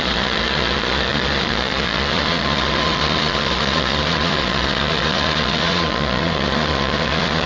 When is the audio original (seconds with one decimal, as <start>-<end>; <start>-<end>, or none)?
none